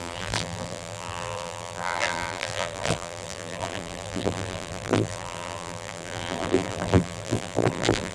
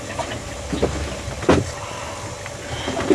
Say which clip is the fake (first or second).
first